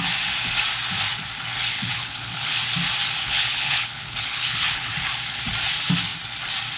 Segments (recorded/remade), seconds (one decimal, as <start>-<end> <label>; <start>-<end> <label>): 0.0-1.6 recorded; 1.6-2.6 remade; 2.6-3.2 recorded; 3.2-4.9 remade; 4.9-6.8 recorded

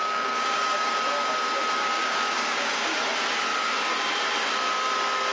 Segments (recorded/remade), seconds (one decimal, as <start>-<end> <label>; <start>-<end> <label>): 0.0-0.9 remade; 0.9-1.8 recorded; 1.8-3.0 remade; 3.0-5.3 recorded

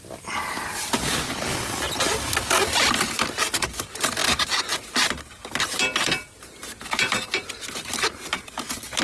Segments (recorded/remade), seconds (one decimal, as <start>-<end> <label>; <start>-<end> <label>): 0.0-9.0 recorded

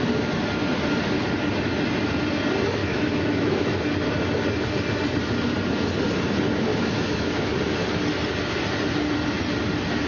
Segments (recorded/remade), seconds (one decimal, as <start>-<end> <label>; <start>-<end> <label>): 0.0-2.8 recorded; 2.8-3.8 remade; 3.8-6.7 recorded; 6.7-7.4 remade; 7.4-10.1 recorded

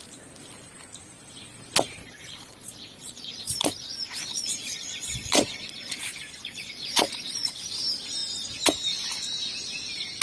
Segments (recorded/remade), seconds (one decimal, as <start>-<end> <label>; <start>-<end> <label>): 0.0-2.0 recorded; 2.0-6.0 remade; 6.0-6.4 recorded; 6.4-7.5 remade; 7.5-10.2 recorded